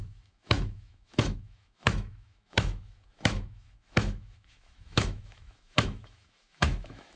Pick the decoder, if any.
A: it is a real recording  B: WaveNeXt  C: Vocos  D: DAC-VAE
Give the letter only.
D